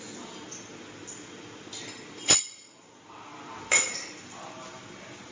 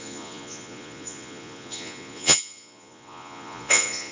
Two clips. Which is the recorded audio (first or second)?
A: first